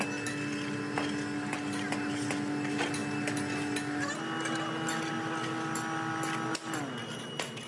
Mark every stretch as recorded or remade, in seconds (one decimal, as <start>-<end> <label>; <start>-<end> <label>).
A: 0.0-7.7 recorded